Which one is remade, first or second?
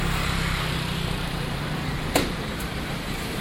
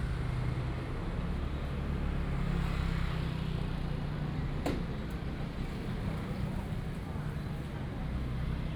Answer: first